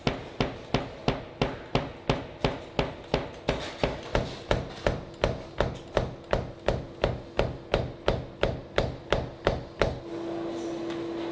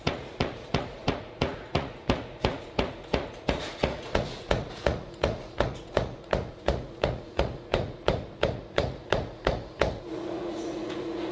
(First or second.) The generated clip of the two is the second